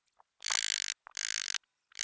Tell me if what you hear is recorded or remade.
recorded